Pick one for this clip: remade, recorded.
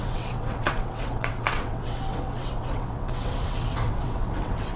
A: remade